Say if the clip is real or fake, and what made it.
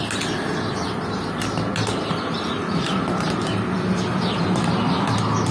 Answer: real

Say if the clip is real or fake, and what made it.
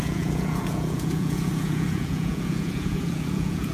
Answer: fake, vocoder, Vocos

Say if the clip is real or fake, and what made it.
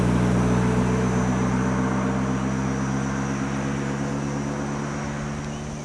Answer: real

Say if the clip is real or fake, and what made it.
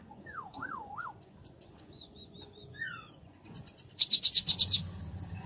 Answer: fake, vocoder, Vocos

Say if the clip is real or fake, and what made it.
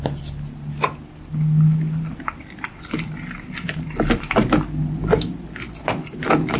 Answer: real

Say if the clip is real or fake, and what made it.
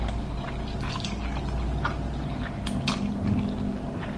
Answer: real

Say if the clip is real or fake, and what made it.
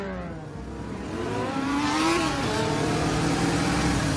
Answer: fake, vocoder, BigVGAN v2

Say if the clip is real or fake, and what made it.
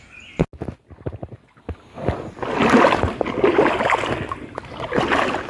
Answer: real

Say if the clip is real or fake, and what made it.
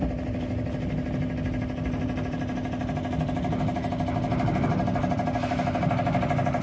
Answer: real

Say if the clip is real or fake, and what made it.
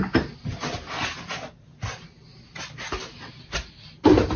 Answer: real